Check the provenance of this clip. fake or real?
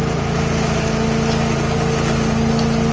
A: real